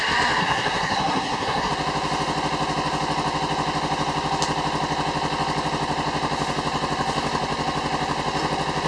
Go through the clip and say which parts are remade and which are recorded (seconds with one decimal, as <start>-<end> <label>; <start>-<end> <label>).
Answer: 0.0-0.4 recorded; 0.4-1.7 remade; 1.7-8.9 recorded